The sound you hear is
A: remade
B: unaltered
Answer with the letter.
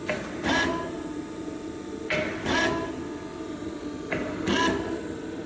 B